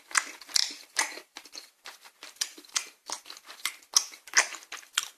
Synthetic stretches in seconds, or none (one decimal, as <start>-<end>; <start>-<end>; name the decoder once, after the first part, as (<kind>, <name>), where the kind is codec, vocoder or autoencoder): 0.6-3.7 (vocoder, BigVGAN v2)